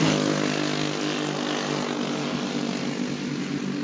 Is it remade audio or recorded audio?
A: recorded